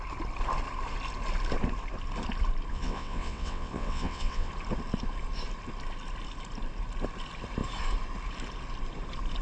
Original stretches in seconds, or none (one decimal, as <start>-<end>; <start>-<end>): 0.0-2.7; 4.5-9.4